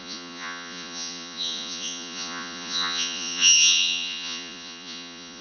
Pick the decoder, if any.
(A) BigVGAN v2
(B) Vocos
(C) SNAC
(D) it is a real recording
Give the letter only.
B